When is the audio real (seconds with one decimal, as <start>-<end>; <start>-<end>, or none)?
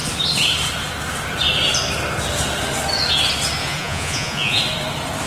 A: 0.0-3.6; 4.6-5.3